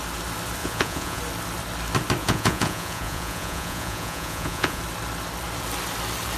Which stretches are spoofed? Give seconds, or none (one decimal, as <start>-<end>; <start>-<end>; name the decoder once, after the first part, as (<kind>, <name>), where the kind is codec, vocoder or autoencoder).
0.6-1.2 (vocoder, Vocos); 2.2-4.8